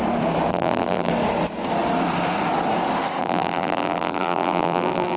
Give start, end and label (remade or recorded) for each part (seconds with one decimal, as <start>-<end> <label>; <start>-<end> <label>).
0.0-0.5 recorded; 0.5-1.1 remade; 1.1-3.2 recorded; 3.2-5.2 remade